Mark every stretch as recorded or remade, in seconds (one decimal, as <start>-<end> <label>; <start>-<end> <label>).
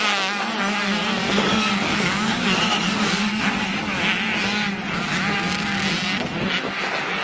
0.0-1.2 recorded; 1.2-4.0 remade; 4.0-7.2 recorded